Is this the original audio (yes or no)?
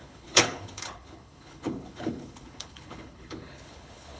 no